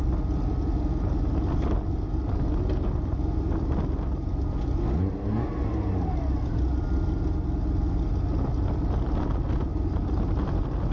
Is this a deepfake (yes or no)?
no